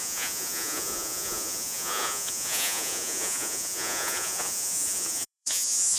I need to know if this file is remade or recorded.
remade